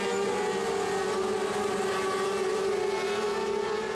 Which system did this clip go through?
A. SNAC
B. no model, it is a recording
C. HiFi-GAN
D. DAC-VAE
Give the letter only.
B